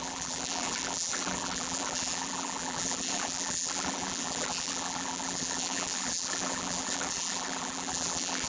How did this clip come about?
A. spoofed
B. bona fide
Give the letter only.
A